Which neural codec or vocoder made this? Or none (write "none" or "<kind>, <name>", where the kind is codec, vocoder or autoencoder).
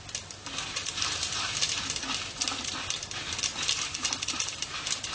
none